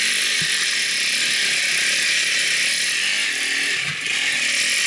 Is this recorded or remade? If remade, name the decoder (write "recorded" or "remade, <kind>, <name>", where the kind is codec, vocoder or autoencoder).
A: recorded